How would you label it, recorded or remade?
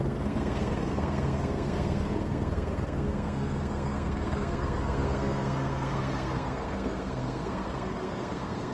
remade